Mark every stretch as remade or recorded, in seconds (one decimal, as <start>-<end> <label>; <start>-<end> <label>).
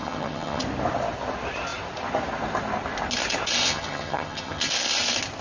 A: 0.0-0.6 remade; 0.6-3.6 recorded; 3.6-4.7 remade; 4.7-5.4 recorded